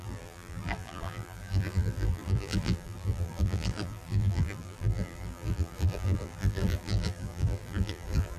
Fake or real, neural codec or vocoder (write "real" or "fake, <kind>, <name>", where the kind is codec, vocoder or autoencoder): fake, vocoder, BigVGAN v2